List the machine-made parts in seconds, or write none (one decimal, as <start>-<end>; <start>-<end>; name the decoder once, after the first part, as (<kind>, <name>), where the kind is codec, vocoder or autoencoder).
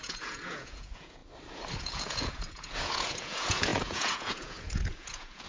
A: 0.0-1.2 (vocoder, Vocos); 1.8-5.5